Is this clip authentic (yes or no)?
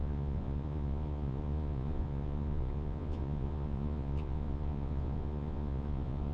no